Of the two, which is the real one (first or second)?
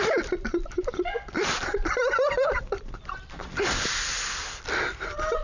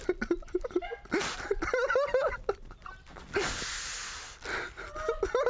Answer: second